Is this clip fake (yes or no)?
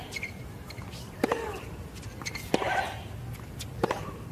no